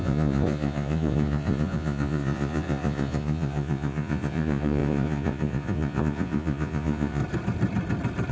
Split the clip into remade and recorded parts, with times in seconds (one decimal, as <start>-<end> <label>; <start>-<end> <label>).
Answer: 0.0-7.2 remade; 7.2-8.3 recorded